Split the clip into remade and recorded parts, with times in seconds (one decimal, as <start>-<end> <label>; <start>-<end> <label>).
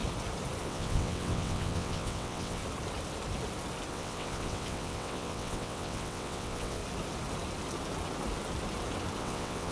0.0-0.6 recorded; 0.6-2.6 remade; 2.6-3.9 recorded; 3.9-6.8 remade; 6.8-9.2 recorded; 9.2-9.7 remade